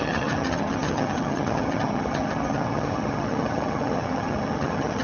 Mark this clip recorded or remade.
remade